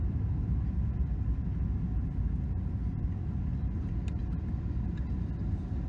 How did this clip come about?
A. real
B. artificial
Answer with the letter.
A